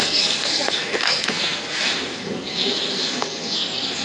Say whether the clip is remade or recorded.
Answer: remade